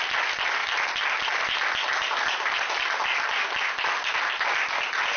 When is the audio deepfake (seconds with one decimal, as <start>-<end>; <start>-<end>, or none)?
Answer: none